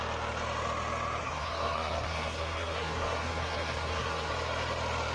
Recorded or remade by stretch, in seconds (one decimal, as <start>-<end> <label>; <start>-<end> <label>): 0.0-1.2 recorded; 1.2-4.3 remade; 4.3-5.1 recorded